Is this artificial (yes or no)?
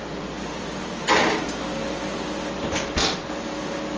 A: no